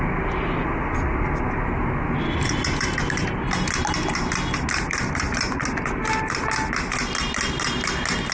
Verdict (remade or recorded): recorded